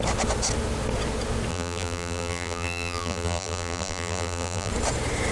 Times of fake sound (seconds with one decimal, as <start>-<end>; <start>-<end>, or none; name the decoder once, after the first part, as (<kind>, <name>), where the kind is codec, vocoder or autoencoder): 1.5-4.7 (vocoder, BigVGAN v2)